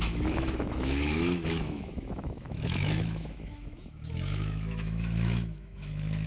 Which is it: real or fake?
fake